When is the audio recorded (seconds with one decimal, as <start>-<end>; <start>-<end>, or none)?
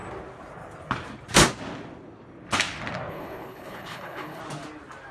0.0-3.1; 4.4-5.1